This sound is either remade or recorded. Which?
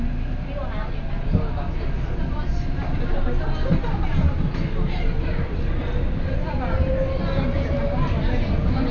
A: recorded